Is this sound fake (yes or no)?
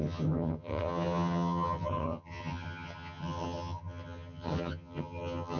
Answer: yes